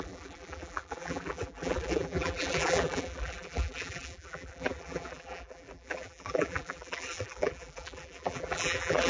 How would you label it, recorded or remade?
remade